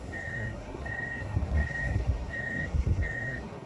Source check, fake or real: fake